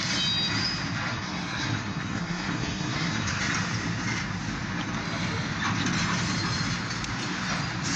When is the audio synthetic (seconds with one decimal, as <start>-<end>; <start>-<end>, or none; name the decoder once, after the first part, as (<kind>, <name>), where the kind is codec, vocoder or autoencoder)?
1.1-3.4 (codec, SNAC)